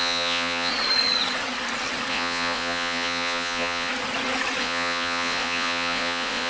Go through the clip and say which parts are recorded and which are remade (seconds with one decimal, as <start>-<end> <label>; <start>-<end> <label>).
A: 0.0-0.7 remade; 0.7-2.1 recorded; 2.1-3.9 remade; 3.9-4.6 recorded; 4.6-6.5 remade